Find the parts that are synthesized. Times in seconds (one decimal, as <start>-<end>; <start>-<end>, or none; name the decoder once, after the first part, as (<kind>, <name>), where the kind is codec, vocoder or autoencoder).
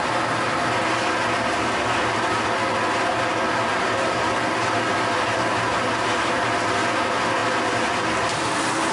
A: none